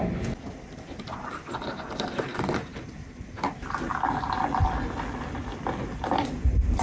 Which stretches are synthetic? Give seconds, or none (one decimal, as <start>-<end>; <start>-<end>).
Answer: none